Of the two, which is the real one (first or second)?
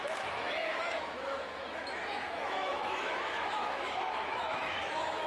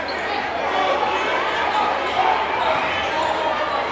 second